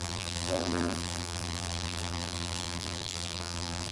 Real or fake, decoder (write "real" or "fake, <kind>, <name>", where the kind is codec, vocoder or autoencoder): fake, vocoder, BigVGAN v2